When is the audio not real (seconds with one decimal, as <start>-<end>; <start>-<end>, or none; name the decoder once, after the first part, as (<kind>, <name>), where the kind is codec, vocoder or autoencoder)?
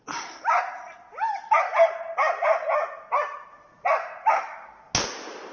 4.3-4.8 (autoencoder, DAC-VAE)